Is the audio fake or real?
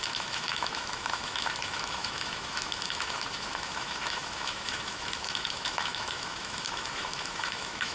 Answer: fake